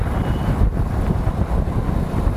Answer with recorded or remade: recorded